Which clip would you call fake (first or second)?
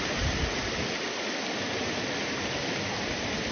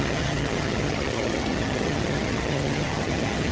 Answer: second